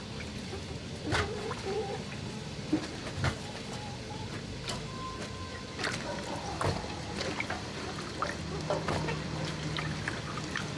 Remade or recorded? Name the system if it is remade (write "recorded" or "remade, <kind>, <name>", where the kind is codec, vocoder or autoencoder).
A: recorded